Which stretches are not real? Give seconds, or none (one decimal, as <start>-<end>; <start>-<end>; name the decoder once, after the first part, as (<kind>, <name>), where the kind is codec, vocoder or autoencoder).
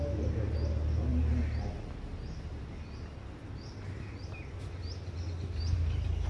none